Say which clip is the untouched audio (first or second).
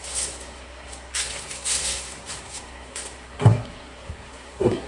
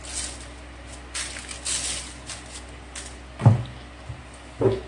second